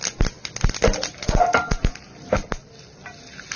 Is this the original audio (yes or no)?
yes